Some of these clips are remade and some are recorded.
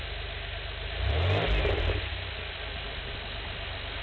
recorded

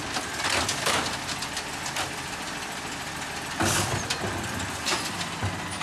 recorded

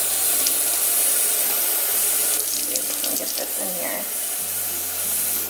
recorded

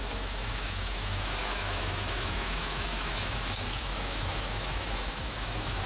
remade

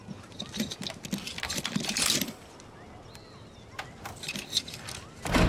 recorded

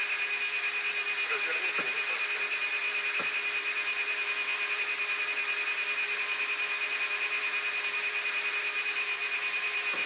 recorded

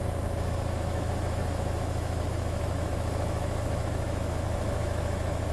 remade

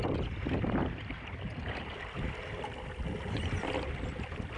recorded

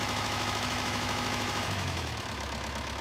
remade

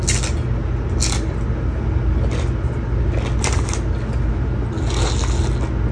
recorded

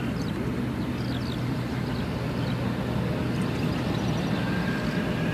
recorded